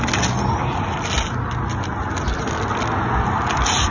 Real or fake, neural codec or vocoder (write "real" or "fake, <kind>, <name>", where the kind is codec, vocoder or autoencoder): real